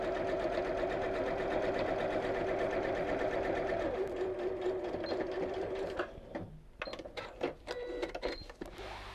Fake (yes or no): no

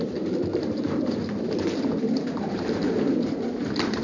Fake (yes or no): yes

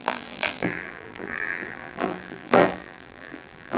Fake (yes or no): yes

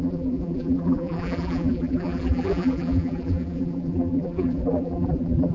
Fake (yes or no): yes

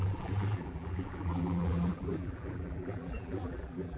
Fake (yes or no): yes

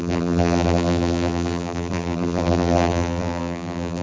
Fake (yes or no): yes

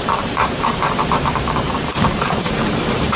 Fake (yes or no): yes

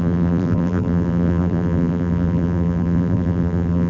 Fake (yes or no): yes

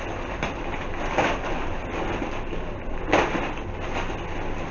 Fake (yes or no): no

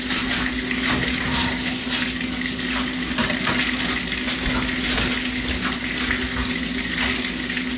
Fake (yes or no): no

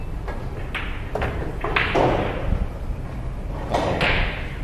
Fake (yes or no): no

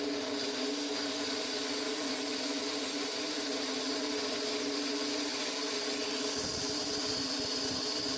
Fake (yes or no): no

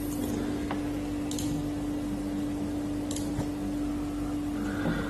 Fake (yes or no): no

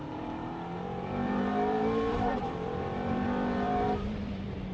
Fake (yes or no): yes